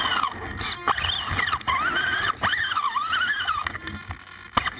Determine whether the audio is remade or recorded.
recorded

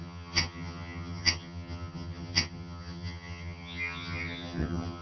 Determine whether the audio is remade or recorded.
remade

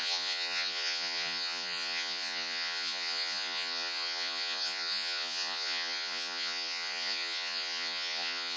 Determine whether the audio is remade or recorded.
remade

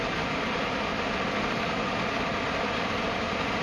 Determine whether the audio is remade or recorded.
recorded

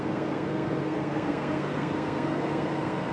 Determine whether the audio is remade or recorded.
remade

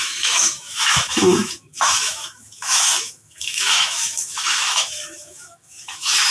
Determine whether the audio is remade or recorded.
remade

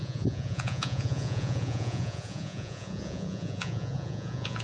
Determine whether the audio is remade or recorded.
remade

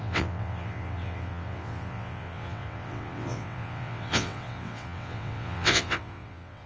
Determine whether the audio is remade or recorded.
remade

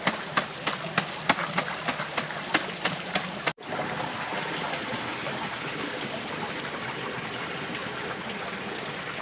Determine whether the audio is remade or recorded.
recorded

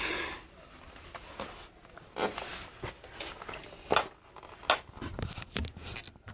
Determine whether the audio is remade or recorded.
recorded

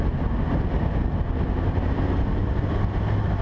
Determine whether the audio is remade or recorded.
recorded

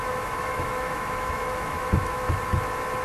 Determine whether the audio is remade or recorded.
remade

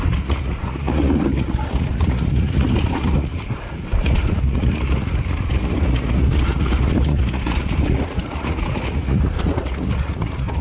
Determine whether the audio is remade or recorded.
remade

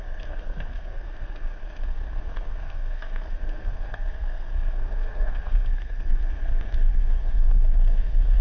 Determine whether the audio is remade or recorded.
remade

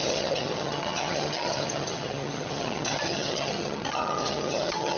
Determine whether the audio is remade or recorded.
remade